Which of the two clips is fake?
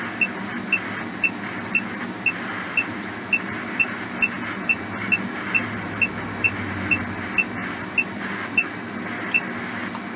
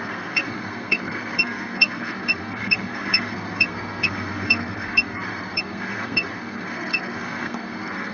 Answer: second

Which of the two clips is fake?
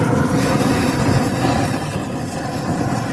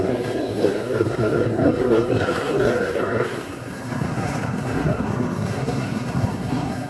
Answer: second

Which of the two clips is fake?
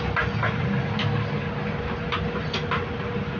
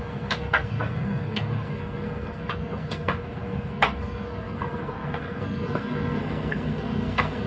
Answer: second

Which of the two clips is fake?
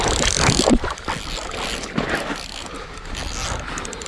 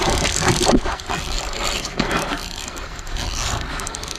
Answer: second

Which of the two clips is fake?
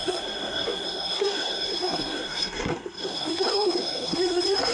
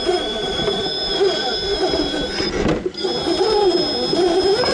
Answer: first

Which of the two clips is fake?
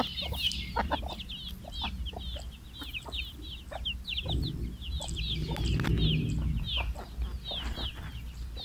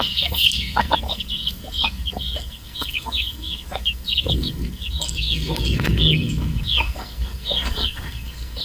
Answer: second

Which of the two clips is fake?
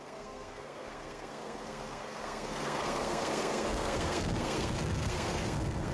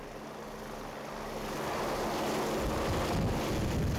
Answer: first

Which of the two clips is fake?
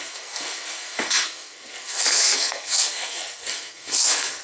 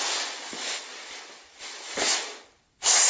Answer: first